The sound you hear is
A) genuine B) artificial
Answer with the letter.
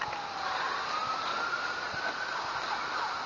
A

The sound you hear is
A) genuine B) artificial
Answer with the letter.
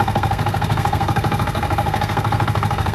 B